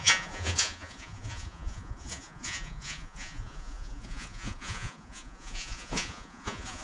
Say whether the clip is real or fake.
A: fake